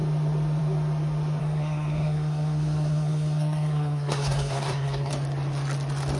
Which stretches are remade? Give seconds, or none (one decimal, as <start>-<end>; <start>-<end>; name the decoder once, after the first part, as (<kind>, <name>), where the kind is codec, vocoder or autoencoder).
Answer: 1.4-5.1 (codec, SNAC)